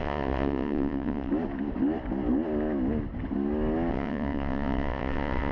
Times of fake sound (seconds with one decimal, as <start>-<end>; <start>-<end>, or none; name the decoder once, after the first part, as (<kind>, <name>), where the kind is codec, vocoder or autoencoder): 0.0-1.3 (vocoder, WaveNeXt); 3.9-5.5